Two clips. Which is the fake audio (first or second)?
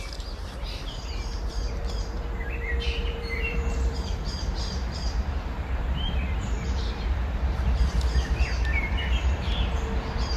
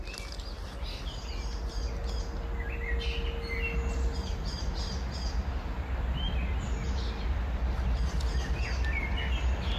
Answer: first